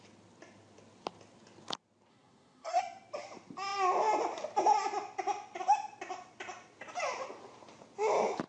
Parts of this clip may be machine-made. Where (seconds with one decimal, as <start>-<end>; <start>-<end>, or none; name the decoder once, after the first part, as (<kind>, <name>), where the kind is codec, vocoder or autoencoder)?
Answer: 2.1-2.8 (codec, SNAC)